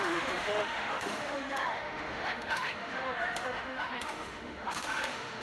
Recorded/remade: remade